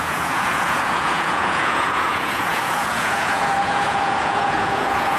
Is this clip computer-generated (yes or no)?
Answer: yes